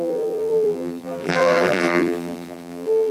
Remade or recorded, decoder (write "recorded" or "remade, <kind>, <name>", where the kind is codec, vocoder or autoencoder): remade, vocoder, BigVGAN v2